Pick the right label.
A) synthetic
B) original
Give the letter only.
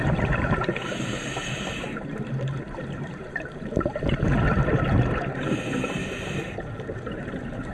A